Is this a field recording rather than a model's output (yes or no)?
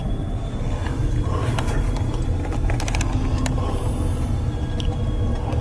yes